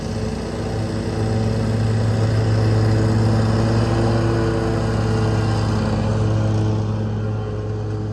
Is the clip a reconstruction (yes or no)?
no